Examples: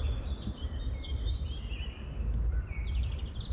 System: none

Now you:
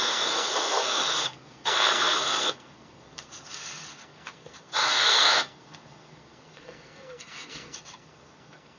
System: codec, SNAC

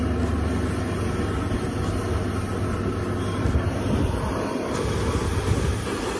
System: none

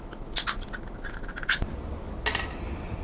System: none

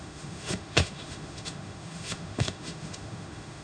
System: autoencoder, DAC-VAE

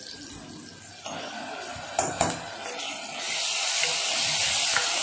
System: none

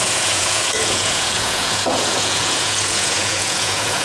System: vocoder, Vocos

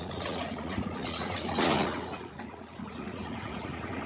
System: vocoder, Vocos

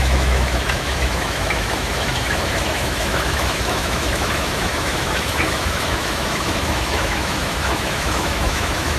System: autoencoder, DAC-VAE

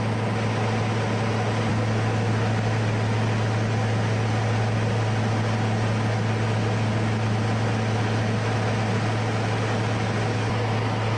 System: none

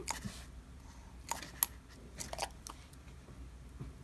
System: none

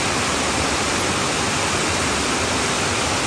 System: none